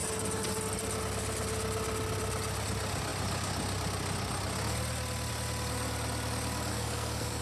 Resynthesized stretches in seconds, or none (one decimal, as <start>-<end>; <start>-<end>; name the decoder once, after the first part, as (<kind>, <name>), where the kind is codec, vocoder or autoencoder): 6.7-7.4 (codec, SNAC)